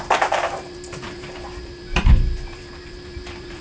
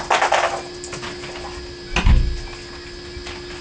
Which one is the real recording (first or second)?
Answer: second